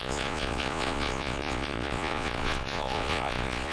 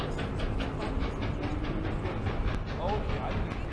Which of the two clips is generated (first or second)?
first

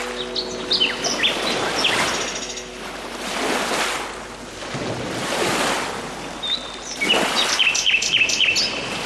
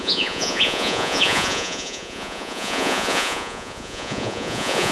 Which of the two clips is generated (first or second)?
second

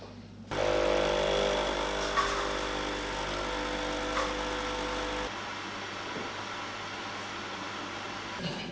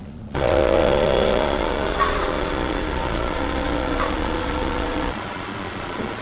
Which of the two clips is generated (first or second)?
second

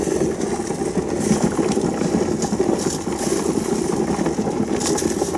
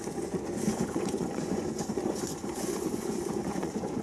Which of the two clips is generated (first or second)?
second